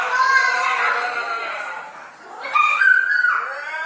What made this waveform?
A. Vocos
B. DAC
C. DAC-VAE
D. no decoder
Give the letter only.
D